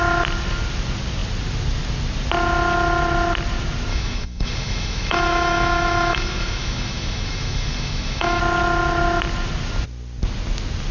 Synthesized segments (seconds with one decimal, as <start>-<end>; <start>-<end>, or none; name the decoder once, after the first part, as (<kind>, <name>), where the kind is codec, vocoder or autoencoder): 3.9-8.4 (autoencoder, DAC-VAE)